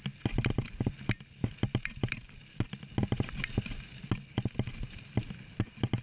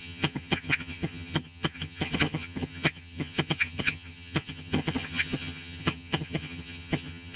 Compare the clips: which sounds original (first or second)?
first